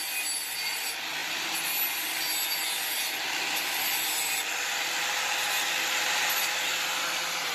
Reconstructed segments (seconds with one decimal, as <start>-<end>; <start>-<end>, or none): none